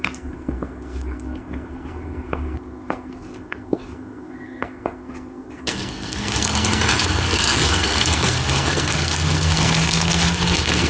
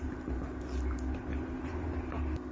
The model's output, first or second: first